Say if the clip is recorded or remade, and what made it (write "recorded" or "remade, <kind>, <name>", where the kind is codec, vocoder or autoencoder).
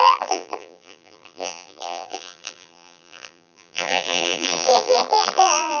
remade, vocoder, BigVGAN v2